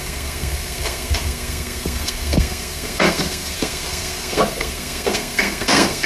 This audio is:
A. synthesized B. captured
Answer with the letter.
A